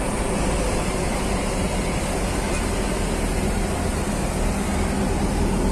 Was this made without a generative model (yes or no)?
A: yes